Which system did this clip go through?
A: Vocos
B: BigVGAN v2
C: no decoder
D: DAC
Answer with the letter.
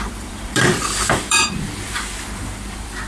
B